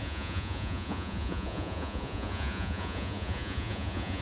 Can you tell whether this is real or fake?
fake